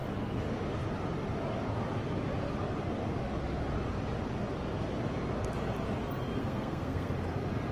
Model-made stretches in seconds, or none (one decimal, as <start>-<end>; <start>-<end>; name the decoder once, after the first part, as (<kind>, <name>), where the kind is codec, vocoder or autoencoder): 6.4-7.1 (codec, SNAC)

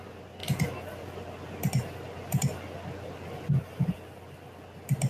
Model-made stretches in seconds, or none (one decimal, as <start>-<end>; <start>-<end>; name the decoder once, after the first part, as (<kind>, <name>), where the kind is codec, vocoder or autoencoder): none

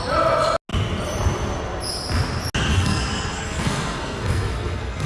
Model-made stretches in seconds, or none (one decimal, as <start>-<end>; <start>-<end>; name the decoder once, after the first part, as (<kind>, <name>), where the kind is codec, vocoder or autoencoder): 2.7-5.1 (codec, SNAC)

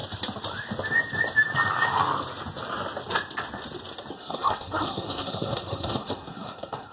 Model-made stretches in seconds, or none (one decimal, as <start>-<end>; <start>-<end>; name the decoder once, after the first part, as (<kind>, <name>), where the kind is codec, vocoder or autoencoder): 4.1-6.9 (codec, SNAC)

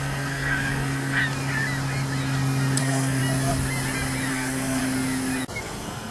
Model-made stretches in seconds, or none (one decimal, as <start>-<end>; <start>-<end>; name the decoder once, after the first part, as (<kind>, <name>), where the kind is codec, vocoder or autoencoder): 0.0-1.2 (codec, SNAC); 2.8-3.2; 4.3-4.8; 5.6-6.1

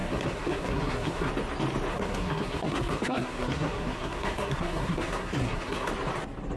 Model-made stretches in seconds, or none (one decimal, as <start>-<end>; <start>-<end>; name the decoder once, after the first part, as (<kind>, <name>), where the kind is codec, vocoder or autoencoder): 0.0-1.3 (codec, SNAC); 1.9-5.9

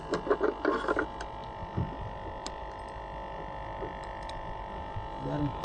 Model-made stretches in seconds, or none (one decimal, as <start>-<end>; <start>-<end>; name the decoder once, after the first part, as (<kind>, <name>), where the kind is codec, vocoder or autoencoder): none